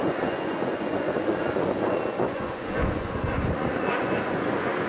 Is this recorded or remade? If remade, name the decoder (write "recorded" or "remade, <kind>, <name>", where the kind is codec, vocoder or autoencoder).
remade, vocoder, Vocos